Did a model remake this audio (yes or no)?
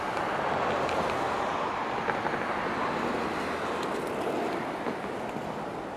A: no